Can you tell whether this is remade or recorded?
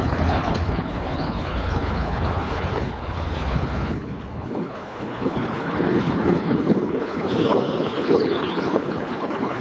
remade